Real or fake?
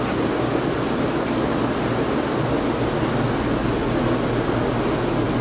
real